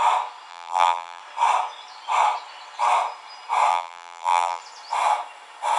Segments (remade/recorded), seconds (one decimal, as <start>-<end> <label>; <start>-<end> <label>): 0.0-0.5 recorded; 0.5-1.2 remade; 1.2-3.7 recorded; 3.7-4.6 remade; 4.6-5.8 recorded